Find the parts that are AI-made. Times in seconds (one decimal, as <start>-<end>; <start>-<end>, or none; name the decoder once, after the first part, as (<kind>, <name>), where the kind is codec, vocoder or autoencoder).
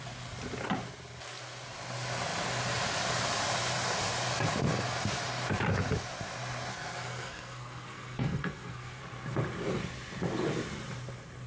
6.7-9.0 (codec, SNAC)